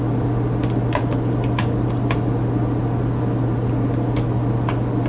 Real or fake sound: real